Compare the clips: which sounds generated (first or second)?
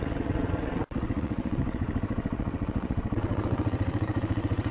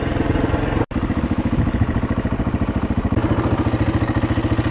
first